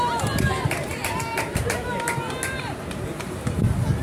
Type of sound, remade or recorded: recorded